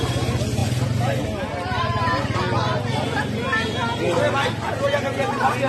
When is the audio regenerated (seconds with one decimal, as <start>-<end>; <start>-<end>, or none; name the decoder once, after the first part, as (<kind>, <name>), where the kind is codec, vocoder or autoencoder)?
none